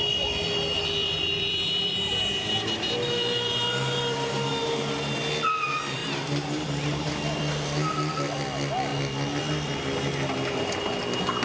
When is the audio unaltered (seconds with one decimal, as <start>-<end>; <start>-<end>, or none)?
0.0-1.0; 4.5-6.0; 7.1-11.4